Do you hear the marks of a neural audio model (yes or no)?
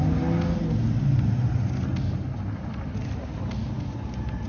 no